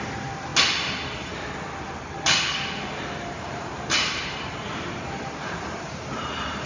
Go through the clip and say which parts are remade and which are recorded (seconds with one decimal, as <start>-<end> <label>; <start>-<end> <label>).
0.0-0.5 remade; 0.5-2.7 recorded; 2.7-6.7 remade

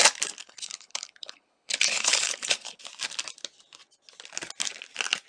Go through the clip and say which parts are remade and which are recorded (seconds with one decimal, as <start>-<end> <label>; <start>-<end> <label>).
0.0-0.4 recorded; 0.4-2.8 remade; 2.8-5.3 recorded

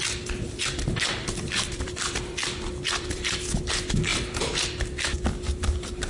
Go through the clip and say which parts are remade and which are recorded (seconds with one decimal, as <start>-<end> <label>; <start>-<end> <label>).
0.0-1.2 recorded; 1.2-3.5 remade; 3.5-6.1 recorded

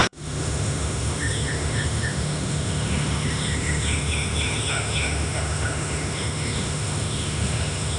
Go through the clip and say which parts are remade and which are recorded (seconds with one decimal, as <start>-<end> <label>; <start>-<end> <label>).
0.0-8.0 remade